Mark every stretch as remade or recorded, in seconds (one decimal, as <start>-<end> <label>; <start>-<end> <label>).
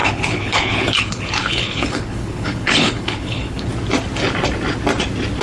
0.0-3.7 remade; 3.7-5.4 recorded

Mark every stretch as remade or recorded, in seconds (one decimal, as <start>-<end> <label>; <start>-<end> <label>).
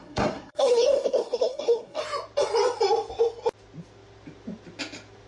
0.0-2.0 remade; 2.0-5.3 recorded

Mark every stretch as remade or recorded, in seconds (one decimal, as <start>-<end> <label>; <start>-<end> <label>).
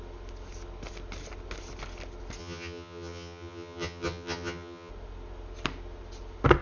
0.0-2.4 recorded; 2.4-4.9 remade; 4.9-6.6 recorded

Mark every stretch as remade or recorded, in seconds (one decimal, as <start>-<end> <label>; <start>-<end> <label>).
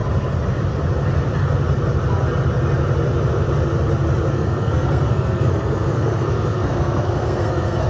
0.0-4.3 recorded; 4.3-7.9 remade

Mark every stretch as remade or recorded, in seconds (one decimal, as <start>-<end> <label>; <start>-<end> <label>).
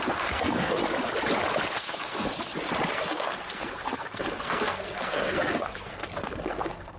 0.0-0.8 remade; 0.8-1.7 recorded; 1.7-2.3 remade; 2.3-2.9 recorded; 2.9-7.0 remade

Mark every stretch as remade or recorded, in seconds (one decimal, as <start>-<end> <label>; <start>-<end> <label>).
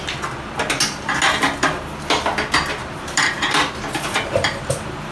0.0-2.8 recorded; 2.8-3.7 remade; 3.7-5.1 recorded